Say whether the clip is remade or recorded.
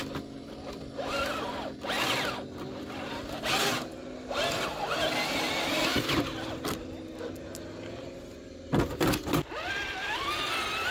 recorded